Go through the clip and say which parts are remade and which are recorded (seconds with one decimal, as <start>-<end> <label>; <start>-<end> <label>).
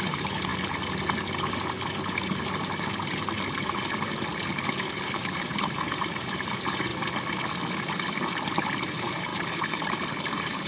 0.0-0.5 remade; 0.5-4.9 recorded; 4.9-6.9 remade; 6.9-8.5 recorded; 8.5-10.7 remade